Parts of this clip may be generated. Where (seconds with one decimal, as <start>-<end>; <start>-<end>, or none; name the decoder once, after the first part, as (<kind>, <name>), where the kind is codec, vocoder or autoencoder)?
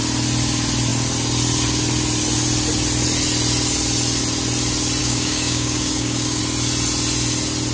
5.0-6.4 (codec, DAC)